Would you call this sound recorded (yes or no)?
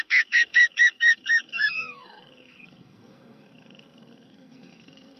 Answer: no